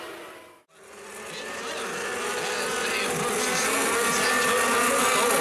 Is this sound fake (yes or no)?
no